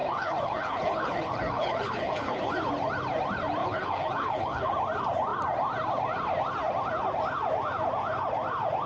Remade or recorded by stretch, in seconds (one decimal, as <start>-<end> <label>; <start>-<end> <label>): 0.0-2.5 remade; 2.5-3.6 recorded; 3.6-4.7 remade; 4.7-8.9 recorded